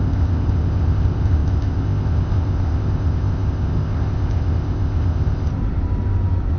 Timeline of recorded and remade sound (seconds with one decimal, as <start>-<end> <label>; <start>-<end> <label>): 0.0-5.5 remade; 5.5-6.6 recorded